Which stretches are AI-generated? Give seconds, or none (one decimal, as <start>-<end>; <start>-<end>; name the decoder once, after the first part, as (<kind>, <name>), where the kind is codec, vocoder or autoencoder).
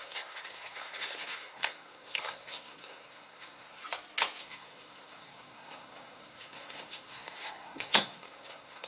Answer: 0.0-3.8 (codec, SNAC); 4.4-8.9